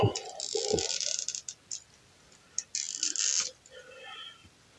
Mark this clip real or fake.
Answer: real